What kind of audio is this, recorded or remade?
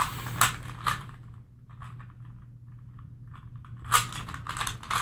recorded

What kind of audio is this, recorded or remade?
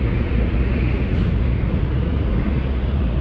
remade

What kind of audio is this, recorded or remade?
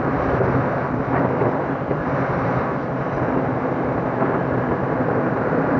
remade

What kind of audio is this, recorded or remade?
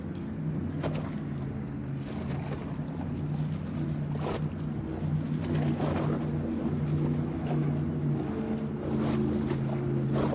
recorded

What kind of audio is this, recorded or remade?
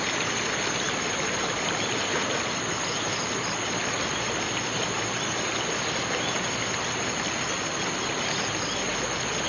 recorded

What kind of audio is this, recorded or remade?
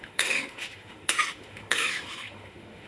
remade